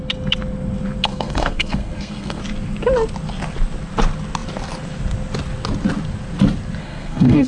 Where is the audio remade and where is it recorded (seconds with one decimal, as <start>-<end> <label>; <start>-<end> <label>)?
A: 0.0-1.1 recorded; 1.1-2.4 remade; 2.4-6.8 recorded; 6.8-7.5 remade